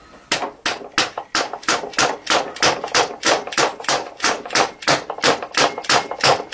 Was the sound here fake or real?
real